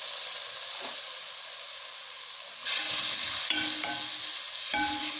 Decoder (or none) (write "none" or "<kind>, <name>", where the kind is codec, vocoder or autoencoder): none